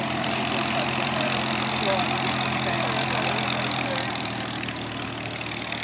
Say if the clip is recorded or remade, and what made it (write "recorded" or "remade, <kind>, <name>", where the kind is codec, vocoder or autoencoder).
remade, vocoder, BigVGAN v2